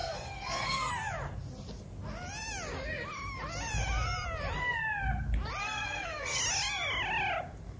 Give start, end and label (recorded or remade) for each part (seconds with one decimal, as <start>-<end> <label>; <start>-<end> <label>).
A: 0.0-0.9 remade; 0.9-5.6 recorded; 5.6-6.4 remade; 6.4-7.8 recorded